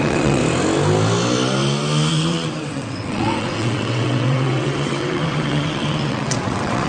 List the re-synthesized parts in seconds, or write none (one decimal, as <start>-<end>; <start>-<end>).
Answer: 0.0-0.4; 2.1-6.9